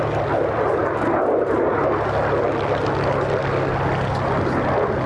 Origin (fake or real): real